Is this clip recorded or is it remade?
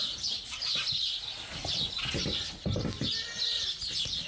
recorded